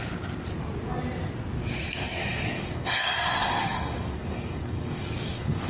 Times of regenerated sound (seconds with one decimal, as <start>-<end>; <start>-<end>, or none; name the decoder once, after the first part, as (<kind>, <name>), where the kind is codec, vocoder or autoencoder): 2.2-5.7 (codec, DAC)